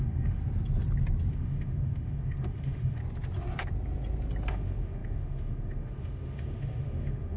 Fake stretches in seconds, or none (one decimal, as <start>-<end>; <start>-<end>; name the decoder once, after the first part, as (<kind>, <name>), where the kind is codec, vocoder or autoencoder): 0.0-0.4 (autoencoder, DAC-VAE); 1.3-3.0; 4.5-7.4